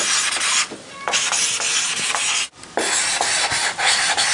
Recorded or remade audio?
recorded